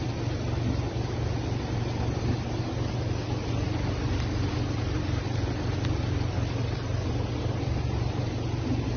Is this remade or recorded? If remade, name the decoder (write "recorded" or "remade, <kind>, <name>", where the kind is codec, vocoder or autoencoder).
recorded